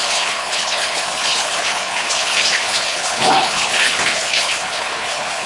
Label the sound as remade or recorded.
remade